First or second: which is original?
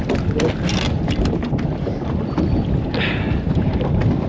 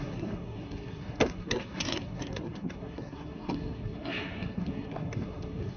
first